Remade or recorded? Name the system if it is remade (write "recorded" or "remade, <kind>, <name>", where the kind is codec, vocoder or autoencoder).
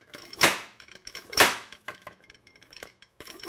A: remade, autoencoder, DAC-VAE